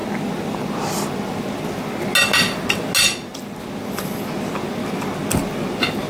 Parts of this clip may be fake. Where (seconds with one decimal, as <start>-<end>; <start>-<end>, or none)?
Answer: none